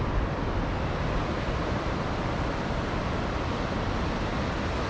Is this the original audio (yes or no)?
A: yes